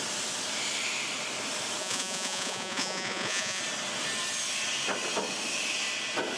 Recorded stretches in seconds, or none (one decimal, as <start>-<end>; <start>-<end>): 0.0-1.8; 3.6-6.4